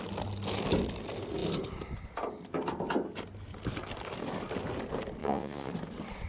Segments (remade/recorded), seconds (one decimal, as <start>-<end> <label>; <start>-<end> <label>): 0.0-5.2 recorded; 5.2-5.7 remade; 5.7-6.3 recorded

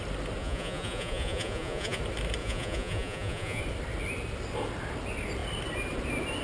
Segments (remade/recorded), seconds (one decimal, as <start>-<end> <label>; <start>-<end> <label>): 0.0-0.4 recorded; 0.4-2.0 remade; 2.0-2.4 recorded; 2.4-3.6 remade; 3.6-6.4 recorded

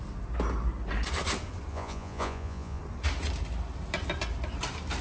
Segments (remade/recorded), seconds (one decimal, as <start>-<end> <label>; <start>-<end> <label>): 0.0-1.7 recorded; 1.7-2.8 remade; 2.8-5.0 recorded

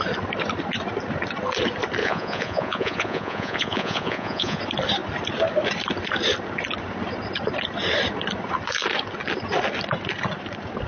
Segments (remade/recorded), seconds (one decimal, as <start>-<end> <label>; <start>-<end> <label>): 0.0-2.0 recorded; 2.0-4.6 remade; 4.6-10.9 recorded

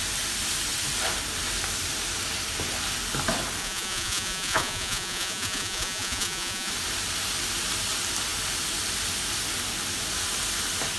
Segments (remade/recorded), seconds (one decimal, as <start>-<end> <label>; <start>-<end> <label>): 0.0-3.6 recorded; 3.6-6.7 remade; 6.7-11.0 recorded

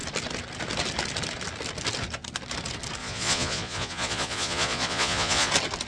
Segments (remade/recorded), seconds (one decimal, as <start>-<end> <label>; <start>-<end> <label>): 0.0-3.0 recorded; 3.0-5.5 remade; 5.5-5.9 recorded

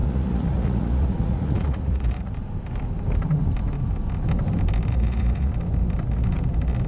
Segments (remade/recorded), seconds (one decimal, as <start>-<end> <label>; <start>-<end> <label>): 0.0-2.3 remade; 2.3-4.9 recorded; 4.9-5.5 remade; 5.5-6.9 recorded